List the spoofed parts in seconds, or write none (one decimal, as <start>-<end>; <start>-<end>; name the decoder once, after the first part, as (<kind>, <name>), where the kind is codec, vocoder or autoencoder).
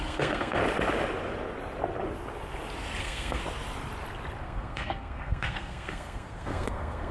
0.0-0.6 (codec, SNAC); 3.0-3.4; 4.4-7.1